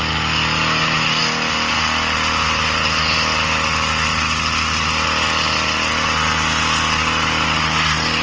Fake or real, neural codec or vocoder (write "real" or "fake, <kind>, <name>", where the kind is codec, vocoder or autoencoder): real